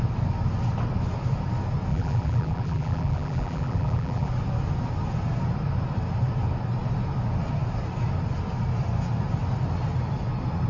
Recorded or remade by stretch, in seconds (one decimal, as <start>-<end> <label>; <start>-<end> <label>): 0.0-1.9 recorded; 1.9-4.3 remade; 4.3-10.7 recorded